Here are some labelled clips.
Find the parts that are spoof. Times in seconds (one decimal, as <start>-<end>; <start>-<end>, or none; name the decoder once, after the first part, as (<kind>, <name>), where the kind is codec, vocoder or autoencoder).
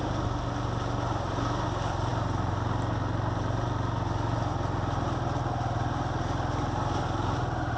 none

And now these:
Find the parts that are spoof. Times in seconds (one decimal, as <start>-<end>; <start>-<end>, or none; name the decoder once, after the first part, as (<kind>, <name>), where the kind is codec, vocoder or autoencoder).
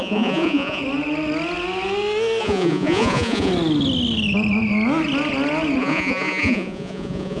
0.0-0.8 (vocoder, Vocos); 2.4-3.5; 5.8-7.4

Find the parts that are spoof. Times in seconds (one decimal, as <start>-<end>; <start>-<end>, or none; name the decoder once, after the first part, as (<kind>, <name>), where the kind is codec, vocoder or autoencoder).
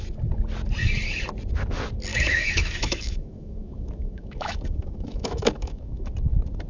2.1-6.1 (autoencoder, DAC-VAE)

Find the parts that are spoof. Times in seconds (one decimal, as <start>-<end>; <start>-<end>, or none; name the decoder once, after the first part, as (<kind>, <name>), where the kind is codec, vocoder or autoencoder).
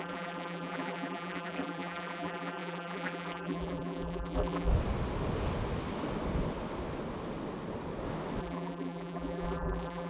0.0-4.7 (vocoder, BigVGAN v2); 8.4-10.1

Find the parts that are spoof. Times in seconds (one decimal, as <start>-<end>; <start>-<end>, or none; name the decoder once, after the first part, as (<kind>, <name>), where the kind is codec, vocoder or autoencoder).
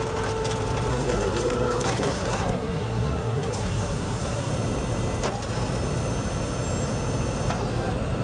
0.9-4.5 (codec, SNAC)